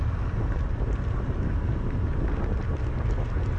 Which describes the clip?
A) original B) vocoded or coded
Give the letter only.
A